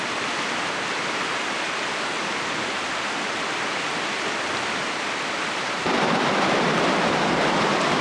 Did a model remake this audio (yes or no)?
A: yes